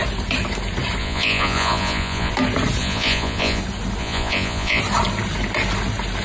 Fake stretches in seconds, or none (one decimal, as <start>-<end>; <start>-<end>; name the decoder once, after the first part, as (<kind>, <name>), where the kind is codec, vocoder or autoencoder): 1.0-2.3 (vocoder, Vocos); 2.8-3.6; 4.0-4.8

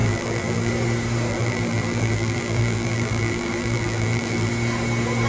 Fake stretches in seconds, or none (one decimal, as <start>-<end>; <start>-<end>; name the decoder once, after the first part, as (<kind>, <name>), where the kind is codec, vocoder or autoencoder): 0.0-0.7 (vocoder, BigVGAN v2); 1.3-4.5

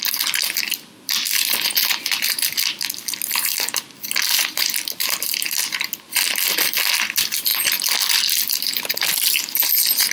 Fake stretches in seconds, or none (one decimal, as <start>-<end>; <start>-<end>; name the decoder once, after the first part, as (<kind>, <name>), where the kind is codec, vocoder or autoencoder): none

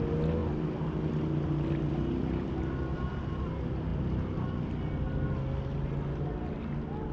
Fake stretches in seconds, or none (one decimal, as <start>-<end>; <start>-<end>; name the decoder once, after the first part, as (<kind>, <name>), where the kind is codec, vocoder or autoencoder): none

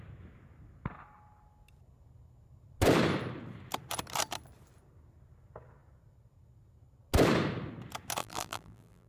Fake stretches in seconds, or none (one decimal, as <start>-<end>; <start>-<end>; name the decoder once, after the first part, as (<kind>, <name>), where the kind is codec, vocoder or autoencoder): 8.2-9.1 (vocoder, BigVGAN v2)